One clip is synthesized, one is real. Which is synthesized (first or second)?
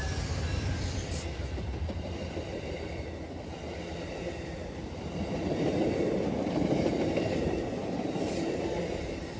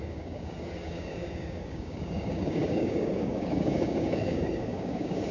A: second